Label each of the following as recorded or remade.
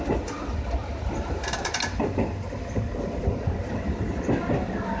recorded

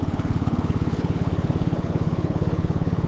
remade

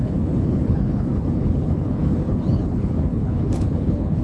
remade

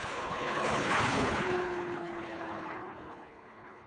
remade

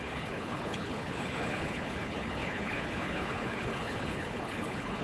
remade